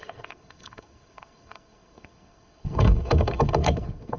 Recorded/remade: remade